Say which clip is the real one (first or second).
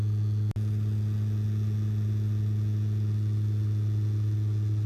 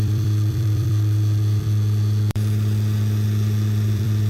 first